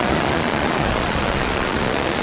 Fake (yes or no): yes